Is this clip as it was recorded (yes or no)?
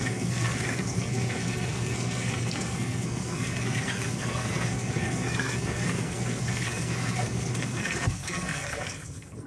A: no